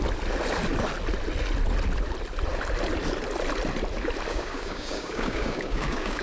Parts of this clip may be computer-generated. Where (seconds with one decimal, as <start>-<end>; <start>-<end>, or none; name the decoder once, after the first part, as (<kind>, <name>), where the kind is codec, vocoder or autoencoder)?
4.3-6.2 (codec, DAC)